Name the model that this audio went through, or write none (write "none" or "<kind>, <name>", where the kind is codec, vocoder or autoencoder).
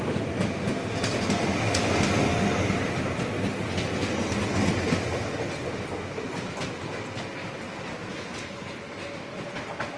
none